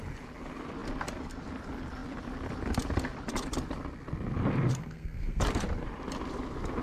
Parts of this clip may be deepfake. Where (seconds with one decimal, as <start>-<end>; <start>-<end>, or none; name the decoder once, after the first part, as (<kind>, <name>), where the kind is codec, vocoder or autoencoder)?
4.7-5.4 (codec, SNAC)